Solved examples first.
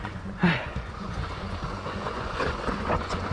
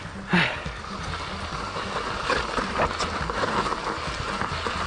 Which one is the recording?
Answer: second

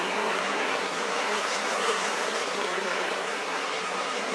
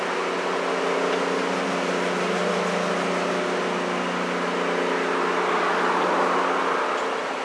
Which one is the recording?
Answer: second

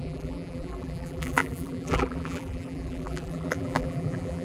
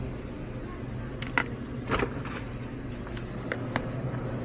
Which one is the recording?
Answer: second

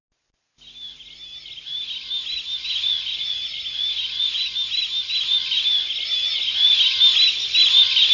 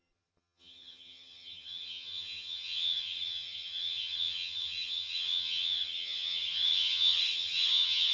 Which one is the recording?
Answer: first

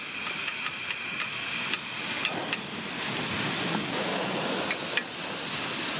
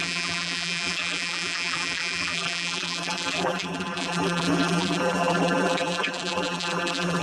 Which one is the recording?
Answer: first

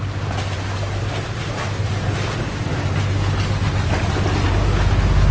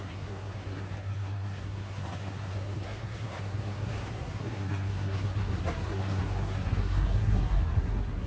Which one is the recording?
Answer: first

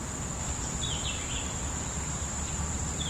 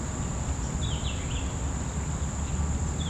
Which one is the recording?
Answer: second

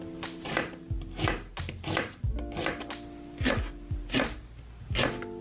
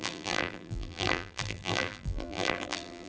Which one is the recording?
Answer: first